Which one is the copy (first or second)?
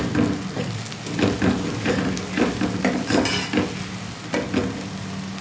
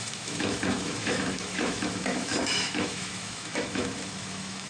second